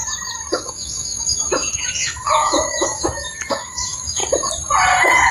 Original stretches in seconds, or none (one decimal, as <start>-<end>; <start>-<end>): 0.0-0.5; 4.2-5.3